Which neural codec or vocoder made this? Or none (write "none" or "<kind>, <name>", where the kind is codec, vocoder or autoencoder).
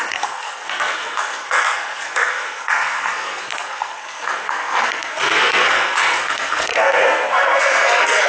codec, SNAC